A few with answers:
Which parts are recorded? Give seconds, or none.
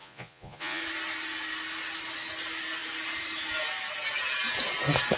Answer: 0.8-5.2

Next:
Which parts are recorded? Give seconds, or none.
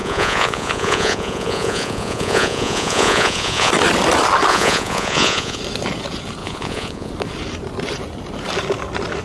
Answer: 3.7-4.5; 5.6-6.4; 7.1-9.2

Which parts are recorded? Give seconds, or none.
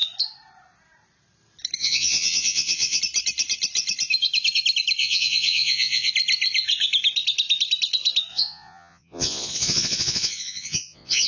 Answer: 0.0-1.8; 3.0-5.0; 6.1-8.3